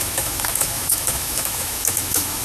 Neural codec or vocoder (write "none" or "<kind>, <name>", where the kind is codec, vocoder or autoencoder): autoencoder, DAC-VAE